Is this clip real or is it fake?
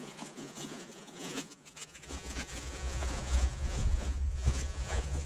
fake